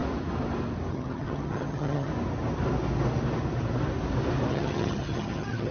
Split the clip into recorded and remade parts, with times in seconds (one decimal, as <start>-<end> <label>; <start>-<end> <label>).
0.0-0.9 recorded; 0.9-2.1 remade; 2.1-4.5 recorded; 4.5-5.7 remade

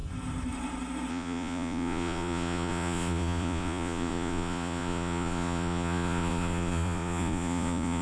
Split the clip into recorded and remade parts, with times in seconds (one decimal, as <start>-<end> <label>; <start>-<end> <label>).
0.0-1.1 recorded; 1.1-8.0 remade